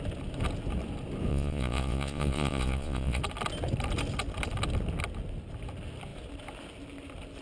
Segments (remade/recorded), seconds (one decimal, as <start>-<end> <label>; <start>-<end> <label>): 0.0-1.3 recorded; 1.3-3.2 remade; 3.2-7.4 recorded